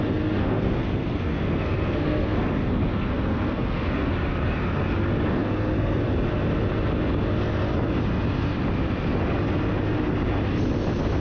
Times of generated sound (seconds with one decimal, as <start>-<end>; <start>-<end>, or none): 0.4-4.1; 5.4-6.0